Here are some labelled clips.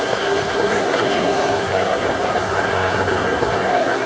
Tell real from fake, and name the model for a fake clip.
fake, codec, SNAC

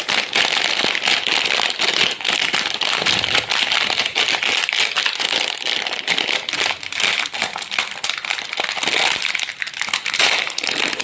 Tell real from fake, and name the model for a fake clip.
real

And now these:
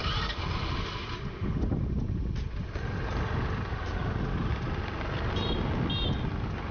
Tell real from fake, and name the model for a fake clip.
real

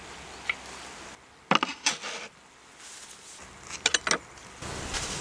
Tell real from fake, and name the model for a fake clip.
real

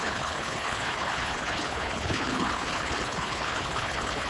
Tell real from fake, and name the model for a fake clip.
fake, codec, HILCodec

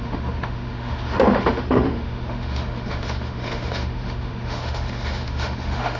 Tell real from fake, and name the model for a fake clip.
fake, autoencoder, DAC-VAE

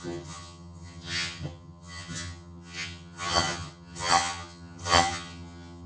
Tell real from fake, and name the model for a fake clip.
fake, vocoder, HiFi-GAN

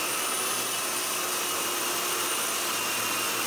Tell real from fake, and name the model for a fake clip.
real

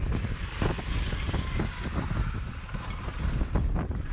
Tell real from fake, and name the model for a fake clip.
real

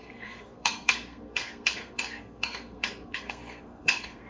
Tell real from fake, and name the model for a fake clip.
fake, codec, SNAC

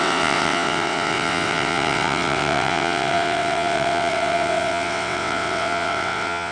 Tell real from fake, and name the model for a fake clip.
fake, vocoder, WaveNeXt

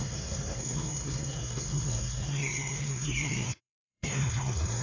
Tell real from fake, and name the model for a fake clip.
fake, codec, SNAC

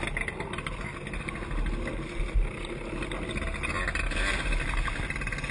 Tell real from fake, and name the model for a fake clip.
real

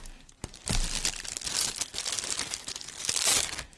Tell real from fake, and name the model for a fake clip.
real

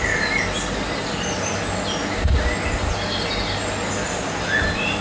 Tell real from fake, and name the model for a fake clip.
real